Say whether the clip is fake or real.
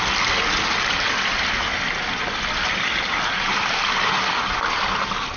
real